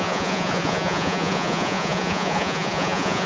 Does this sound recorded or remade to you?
remade